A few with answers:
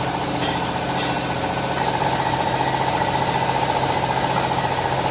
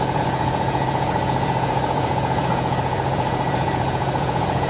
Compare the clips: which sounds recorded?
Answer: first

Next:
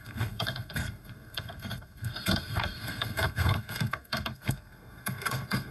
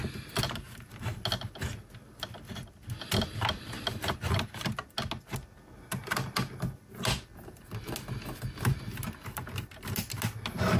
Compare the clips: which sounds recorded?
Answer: second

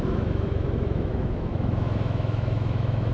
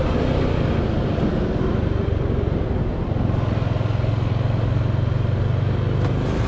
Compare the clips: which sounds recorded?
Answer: second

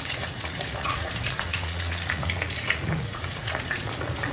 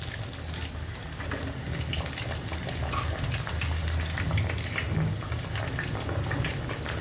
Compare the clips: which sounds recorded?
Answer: second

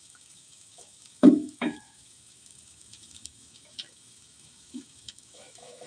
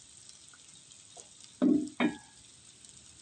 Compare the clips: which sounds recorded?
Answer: second